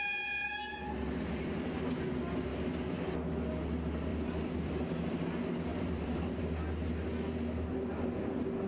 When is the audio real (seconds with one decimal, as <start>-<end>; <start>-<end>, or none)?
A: 0.0-4.1; 5.2-5.7; 6.4-8.7